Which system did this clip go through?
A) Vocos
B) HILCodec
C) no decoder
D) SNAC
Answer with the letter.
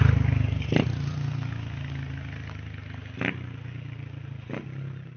C